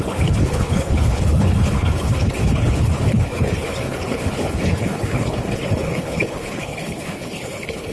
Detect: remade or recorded remade